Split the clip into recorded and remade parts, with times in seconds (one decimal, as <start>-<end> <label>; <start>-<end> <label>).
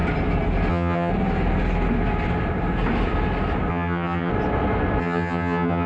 0.0-0.7 recorded; 0.7-1.1 remade; 1.1-3.7 recorded; 3.7-4.3 remade; 4.3-5.0 recorded; 5.0-5.9 remade